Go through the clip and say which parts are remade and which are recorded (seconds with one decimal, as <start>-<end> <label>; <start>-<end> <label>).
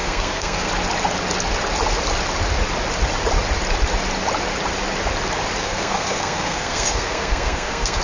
0.0-0.7 remade; 0.7-5.6 recorded; 5.6-8.0 remade